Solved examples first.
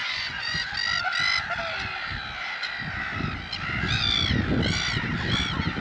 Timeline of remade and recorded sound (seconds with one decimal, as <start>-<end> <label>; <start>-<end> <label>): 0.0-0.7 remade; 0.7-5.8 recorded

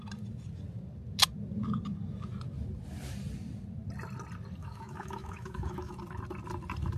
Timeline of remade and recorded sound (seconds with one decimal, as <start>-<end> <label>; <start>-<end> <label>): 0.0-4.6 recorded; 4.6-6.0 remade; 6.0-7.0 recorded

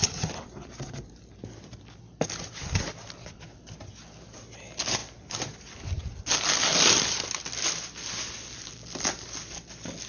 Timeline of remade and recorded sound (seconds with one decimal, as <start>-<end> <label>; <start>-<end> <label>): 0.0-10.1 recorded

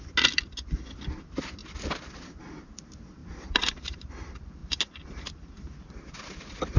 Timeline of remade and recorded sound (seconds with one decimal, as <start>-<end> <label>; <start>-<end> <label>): 0.0-3.2 recorded; 3.2-4.1 remade; 4.1-6.8 recorded

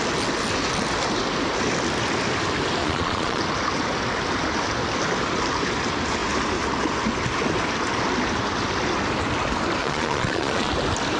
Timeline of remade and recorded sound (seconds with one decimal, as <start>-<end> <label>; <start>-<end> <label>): 0.0-2.8 recorded; 2.8-3.4 remade; 3.4-9.8 recorded; 9.8-10.7 remade; 10.7-11.2 recorded